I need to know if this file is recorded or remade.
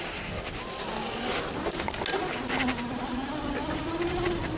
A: recorded